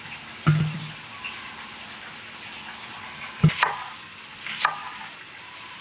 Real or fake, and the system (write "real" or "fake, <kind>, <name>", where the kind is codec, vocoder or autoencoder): real